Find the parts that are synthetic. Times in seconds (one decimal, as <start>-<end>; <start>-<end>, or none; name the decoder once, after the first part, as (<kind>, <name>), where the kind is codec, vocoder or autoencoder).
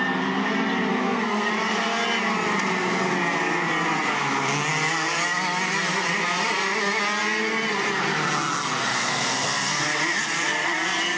0.9-1.5 (codec, SNAC); 8.9-9.8